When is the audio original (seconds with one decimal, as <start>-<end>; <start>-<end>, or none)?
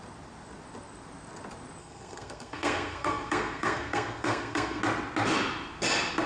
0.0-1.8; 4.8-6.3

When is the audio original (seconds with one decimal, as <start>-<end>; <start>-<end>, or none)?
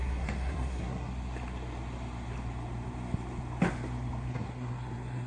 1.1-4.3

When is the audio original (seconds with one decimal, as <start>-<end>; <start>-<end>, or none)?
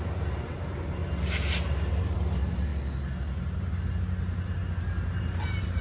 1.0-2.0; 2.7-4.0; 4.6-5.2